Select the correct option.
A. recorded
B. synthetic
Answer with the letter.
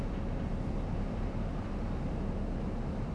B